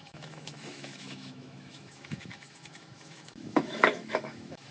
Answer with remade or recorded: remade